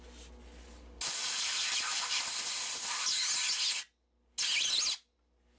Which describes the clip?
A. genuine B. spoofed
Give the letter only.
A